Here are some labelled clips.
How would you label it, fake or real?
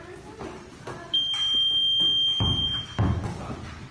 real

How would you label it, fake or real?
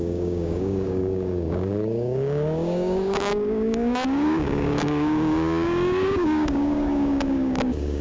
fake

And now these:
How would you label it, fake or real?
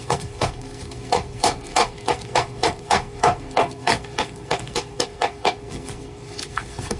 fake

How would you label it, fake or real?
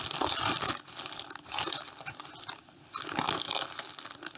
real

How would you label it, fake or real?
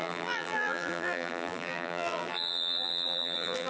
fake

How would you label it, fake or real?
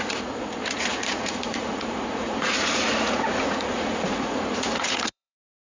fake